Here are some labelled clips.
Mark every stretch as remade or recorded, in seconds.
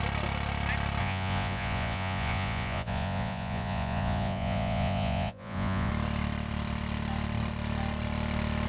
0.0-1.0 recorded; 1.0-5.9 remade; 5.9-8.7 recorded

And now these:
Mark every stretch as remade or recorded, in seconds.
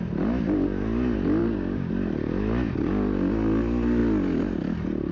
0.0-1.4 recorded; 1.4-1.9 remade; 1.9-5.1 recorded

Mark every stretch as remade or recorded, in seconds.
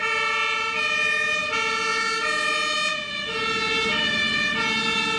0.0-5.2 recorded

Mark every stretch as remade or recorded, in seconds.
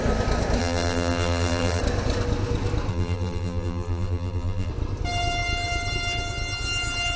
0.0-0.6 recorded; 0.6-1.8 remade; 1.8-2.9 recorded; 2.9-4.7 remade; 4.7-7.2 recorded